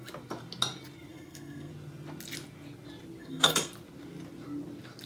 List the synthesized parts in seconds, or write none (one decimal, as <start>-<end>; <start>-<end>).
1.1-1.7; 3.2-3.7